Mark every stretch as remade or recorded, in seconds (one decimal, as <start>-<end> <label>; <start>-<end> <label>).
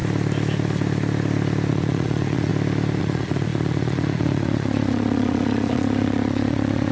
0.0-1.7 recorded; 1.7-2.5 remade; 2.5-3.0 recorded; 3.0-6.9 remade